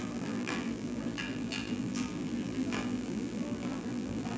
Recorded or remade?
remade